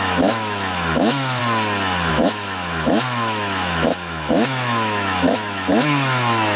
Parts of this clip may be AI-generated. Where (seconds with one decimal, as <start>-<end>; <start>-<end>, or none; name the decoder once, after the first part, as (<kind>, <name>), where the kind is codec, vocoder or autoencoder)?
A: 0.0-1.4 (autoencoder, DAC-VAE); 2.1-6.6

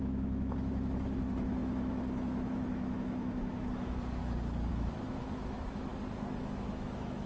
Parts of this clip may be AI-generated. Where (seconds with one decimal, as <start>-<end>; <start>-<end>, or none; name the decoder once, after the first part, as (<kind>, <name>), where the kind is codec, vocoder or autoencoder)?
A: 0.0-4.2 (autoencoder, DAC-VAE); 4.7-5.9; 6.4-7.3

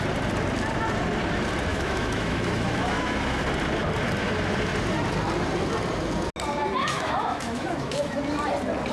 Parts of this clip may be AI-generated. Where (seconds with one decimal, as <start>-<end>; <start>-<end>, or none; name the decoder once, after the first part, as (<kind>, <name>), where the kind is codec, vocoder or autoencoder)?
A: 1.7-3.4 (autoencoder, DAC-VAE); 6.8-8.2

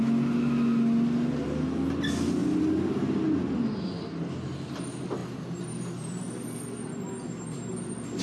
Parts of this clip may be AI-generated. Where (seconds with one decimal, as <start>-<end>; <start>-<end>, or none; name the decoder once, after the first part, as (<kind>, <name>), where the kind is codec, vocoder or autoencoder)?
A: none

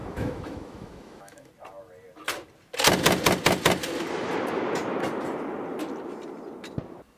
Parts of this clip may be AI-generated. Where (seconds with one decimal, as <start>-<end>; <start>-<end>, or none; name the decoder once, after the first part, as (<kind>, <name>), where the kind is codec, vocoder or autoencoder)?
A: 0.0-1.5 (autoencoder, DAC-VAE)

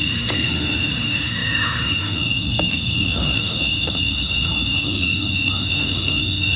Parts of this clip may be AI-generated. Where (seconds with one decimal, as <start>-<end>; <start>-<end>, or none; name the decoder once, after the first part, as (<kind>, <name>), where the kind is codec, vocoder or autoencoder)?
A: 0.0-6.6 (autoencoder, DAC-VAE)